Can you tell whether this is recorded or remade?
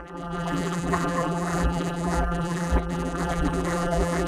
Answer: remade